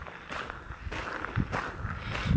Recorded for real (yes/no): yes